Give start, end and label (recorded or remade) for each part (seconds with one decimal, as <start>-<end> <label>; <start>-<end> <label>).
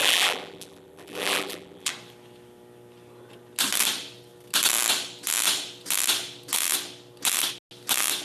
0.0-1.9 remade; 1.9-8.2 recorded